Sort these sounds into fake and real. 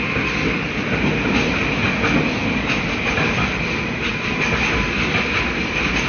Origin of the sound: real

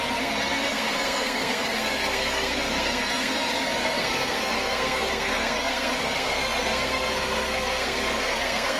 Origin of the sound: fake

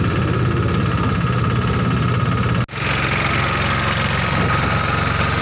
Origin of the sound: real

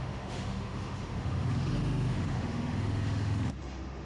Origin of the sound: fake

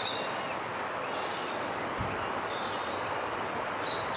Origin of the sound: real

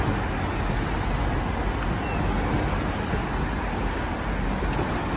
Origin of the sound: real